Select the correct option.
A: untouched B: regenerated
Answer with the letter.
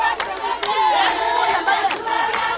A